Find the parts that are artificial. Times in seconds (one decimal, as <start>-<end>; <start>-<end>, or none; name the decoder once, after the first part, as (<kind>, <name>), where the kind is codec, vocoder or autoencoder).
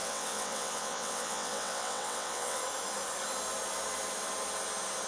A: 0.0-2.6 (vocoder, WaveNeXt)